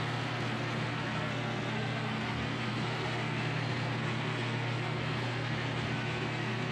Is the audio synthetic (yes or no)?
yes